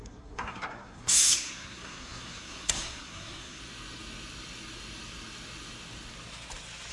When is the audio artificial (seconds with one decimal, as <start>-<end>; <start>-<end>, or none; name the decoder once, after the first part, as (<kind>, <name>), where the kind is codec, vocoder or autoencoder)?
0.0-3.6 (codec, SNAC)